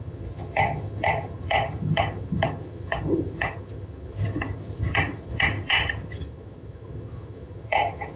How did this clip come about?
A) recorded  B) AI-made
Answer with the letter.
B